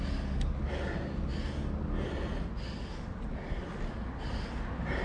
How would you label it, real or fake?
real